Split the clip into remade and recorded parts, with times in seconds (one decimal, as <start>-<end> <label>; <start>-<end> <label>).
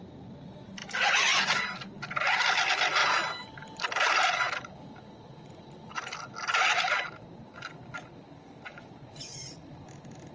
0.0-8.7 recorded; 8.7-9.4 remade; 9.4-10.3 recorded